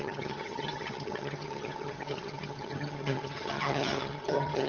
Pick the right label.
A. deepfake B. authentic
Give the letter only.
A